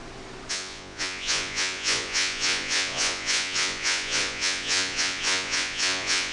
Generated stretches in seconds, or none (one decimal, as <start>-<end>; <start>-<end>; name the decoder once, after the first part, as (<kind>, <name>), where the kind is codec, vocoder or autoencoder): 0.5-6.3 (vocoder, Vocos)